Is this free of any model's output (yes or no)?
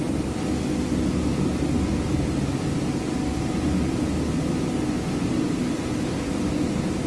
yes